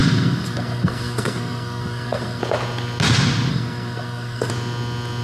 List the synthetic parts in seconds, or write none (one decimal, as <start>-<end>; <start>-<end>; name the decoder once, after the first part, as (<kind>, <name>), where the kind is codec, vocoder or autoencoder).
0.0-2.4 (codec, SNAC); 3.5-4.5